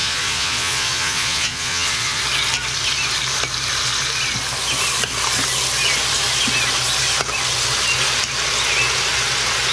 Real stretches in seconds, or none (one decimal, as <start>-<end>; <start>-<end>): 2.2-9.7